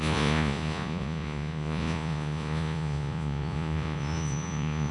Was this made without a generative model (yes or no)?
no